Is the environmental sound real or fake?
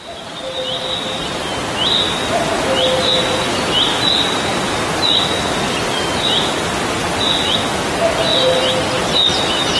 fake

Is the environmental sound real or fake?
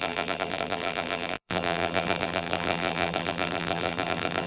fake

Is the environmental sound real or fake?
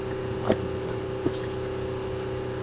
real